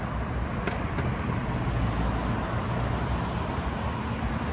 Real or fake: real